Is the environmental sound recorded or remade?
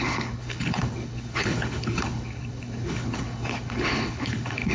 remade